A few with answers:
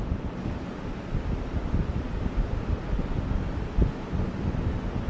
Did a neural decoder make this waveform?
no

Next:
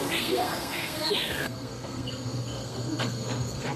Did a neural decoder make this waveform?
yes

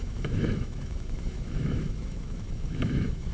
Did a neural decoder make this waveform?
yes